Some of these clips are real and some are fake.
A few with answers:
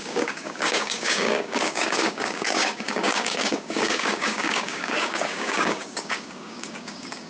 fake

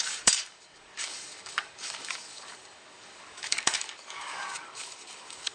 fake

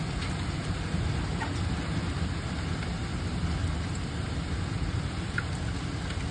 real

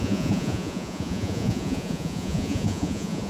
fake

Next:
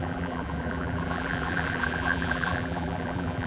fake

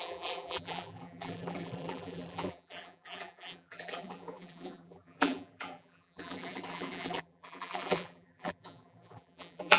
fake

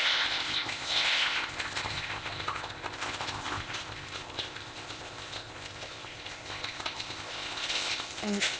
fake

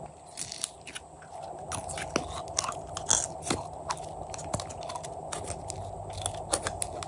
real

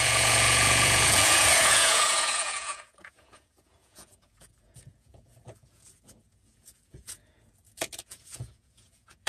fake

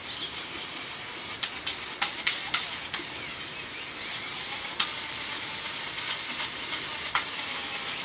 fake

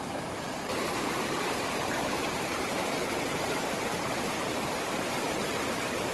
fake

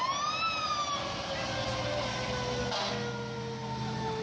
real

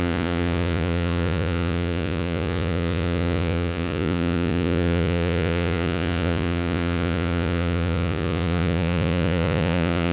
fake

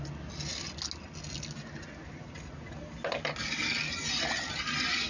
real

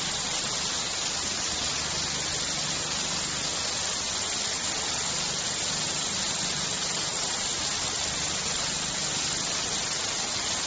real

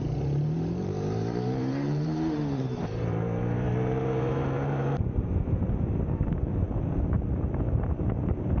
fake